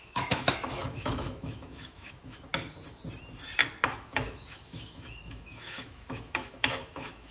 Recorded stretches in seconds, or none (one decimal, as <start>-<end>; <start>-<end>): 2.5-3.9